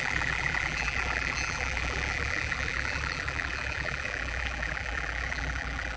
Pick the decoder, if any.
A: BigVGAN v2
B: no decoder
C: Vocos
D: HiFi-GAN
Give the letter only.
A